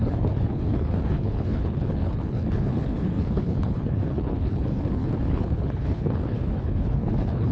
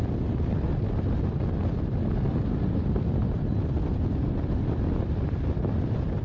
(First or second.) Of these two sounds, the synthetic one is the first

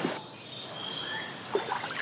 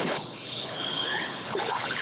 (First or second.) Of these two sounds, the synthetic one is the second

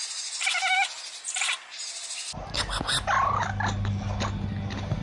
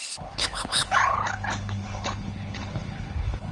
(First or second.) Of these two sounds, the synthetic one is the second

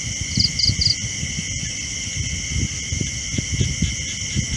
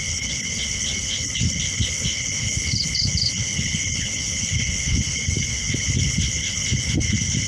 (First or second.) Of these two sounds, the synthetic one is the second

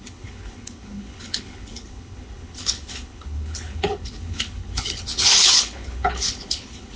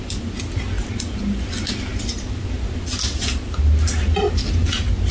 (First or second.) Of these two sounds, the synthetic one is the first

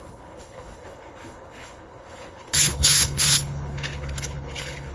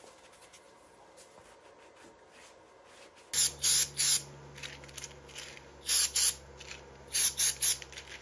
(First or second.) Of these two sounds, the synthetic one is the first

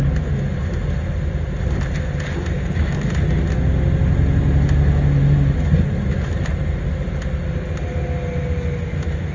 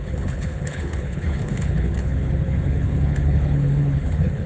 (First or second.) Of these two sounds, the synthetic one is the second